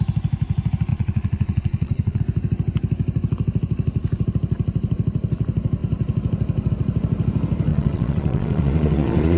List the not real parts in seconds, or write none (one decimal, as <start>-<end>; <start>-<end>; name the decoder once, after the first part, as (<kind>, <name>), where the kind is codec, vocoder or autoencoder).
0.9-2.2 (vocoder, Vocos); 7.7-9.4